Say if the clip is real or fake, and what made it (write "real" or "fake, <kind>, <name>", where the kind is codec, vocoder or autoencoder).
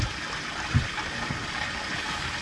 real